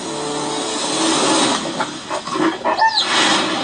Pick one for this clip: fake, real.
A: real